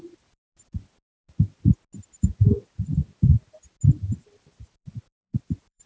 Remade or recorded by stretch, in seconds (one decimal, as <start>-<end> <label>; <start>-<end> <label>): 0.0-0.4 remade; 0.4-3.9 recorded; 3.9-5.9 remade

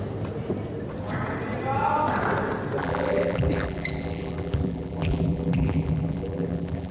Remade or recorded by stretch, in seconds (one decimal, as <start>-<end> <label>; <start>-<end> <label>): 0.0-2.8 recorded; 2.8-6.9 remade

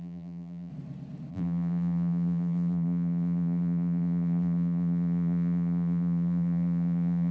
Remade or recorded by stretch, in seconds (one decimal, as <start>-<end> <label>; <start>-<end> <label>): 0.0-0.7 remade; 0.7-1.3 recorded; 1.3-7.3 remade

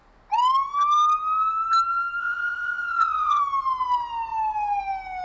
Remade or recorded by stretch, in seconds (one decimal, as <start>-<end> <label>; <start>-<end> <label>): 0.0-2.2 recorded; 2.2-3.4 remade; 3.4-5.2 recorded

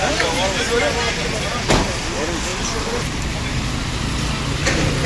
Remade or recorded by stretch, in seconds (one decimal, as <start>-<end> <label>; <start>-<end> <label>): 0.0-5.1 recorded

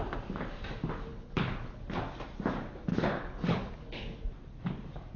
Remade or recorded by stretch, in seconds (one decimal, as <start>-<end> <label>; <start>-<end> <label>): 0.0-1.1 recorded; 1.1-1.8 remade; 1.8-2.9 recorded; 2.9-4.2 remade; 4.2-5.2 recorded